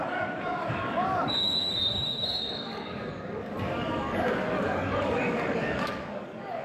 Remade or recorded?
remade